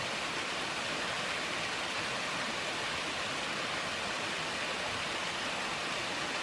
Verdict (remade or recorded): recorded